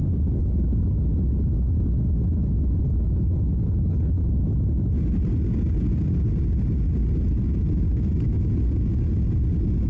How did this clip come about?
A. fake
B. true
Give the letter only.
B